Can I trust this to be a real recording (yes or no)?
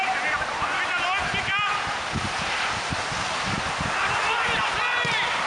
yes